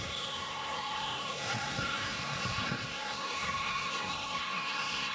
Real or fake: fake